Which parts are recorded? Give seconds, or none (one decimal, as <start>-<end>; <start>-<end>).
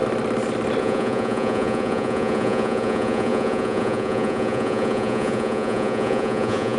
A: 0.0-0.8